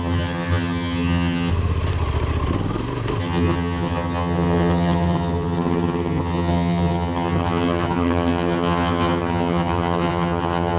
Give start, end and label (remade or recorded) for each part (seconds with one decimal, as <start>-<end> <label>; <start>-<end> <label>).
0.0-1.5 remade; 1.5-3.2 recorded; 3.2-10.8 remade